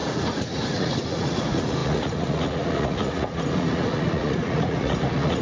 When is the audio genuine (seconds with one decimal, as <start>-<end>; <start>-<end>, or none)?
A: none